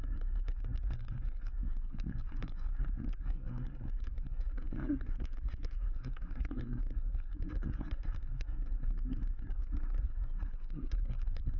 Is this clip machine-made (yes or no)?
yes